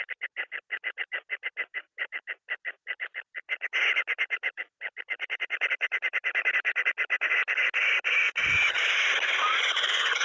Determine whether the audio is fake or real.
real